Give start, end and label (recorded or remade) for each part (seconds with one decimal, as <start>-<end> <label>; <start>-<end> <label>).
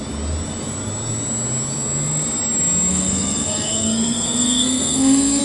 0.0-2.9 recorded; 2.9-5.4 remade